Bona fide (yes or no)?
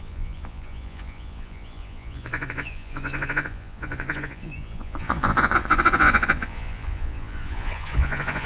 no